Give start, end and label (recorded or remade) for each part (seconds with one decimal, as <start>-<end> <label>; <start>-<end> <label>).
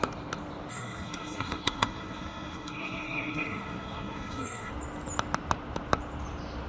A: 0.0-0.7 recorded; 0.7-4.7 remade; 4.7-6.7 recorded